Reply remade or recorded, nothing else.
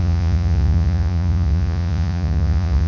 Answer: remade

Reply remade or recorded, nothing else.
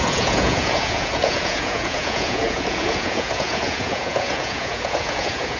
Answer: remade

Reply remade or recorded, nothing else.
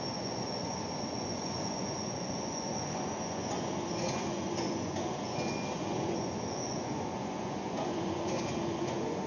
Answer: remade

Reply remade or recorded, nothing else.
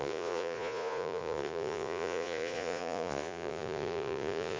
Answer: remade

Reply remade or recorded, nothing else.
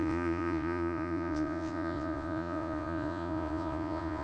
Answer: remade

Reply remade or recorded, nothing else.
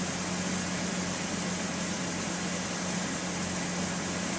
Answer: recorded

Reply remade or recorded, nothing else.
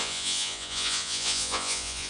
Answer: remade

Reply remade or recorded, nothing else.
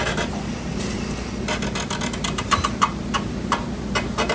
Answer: recorded